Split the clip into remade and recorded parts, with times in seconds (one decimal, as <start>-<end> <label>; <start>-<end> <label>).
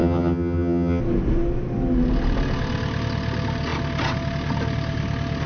0.0-1.0 remade; 1.0-5.5 recorded